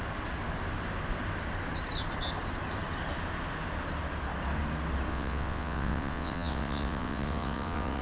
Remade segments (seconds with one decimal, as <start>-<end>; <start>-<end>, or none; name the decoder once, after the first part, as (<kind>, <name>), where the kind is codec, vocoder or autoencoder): 5.1-8.0 (vocoder, WaveNeXt)